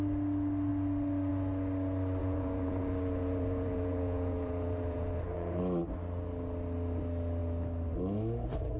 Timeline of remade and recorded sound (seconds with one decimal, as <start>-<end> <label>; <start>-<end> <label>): 0.0-2.2 recorded; 2.2-5.6 remade; 5.6-8.8 recorded